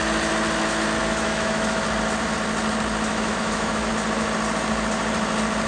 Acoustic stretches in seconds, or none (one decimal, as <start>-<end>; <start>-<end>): 0.0-1.0; 1.8-3.1; 3.9-5.7